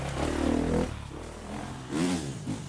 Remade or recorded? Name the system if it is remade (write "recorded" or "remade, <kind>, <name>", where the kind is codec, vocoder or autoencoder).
recorded